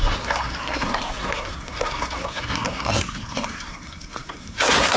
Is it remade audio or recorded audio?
remade